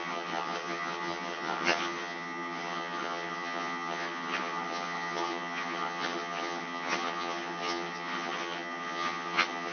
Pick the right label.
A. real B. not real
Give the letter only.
B